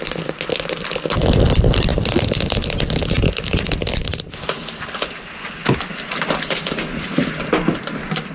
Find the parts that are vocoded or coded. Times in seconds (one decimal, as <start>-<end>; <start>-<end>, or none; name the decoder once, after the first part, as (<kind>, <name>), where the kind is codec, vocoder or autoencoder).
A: none